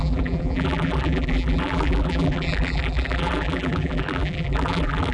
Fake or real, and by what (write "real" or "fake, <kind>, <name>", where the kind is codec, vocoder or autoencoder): fake, vocoder, BigVGAN v2